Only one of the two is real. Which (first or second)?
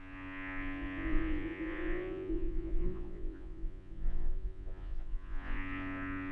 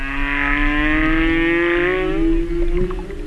second